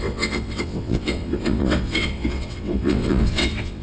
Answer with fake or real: fake